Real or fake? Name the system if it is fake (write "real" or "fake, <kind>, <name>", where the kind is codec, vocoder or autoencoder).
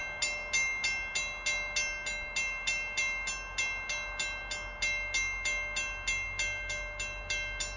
real